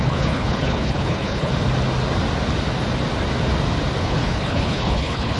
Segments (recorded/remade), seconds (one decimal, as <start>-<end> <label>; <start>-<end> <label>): 0.0-1.5 remade; 1.5-4.0 recorded; 4.0-5.4 remade